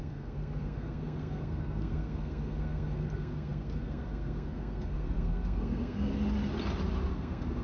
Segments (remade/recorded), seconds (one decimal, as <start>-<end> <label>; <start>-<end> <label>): 0.0-6.1 remade; 6.1-7.1 recorded; 7.1-7.6 remade